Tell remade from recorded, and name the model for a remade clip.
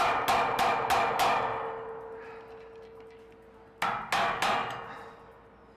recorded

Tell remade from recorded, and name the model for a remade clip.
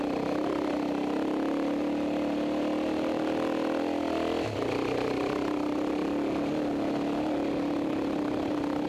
recorded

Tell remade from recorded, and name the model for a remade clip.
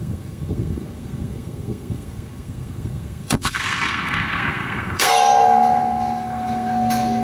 remade, codec, SNAC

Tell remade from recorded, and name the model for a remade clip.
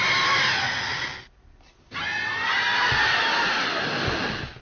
recorded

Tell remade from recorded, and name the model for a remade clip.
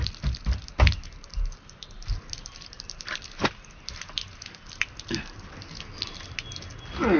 recorded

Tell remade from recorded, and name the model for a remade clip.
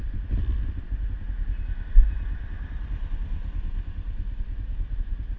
recorded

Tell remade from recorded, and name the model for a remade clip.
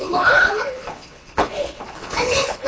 remade, codec, HILCodec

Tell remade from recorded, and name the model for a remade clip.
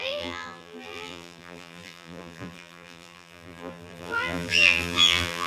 remade, vocoder, BigVGAN v2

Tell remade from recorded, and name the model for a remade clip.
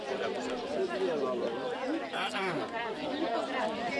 recorded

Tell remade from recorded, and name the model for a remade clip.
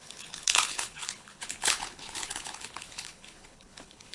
remade, codec, HILCodec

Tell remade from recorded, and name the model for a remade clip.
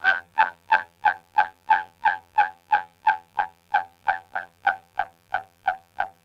remade, vocoder, BigVGAN v2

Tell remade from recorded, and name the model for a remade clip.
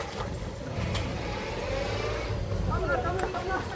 recorded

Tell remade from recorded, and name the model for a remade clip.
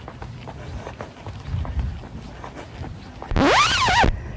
recorded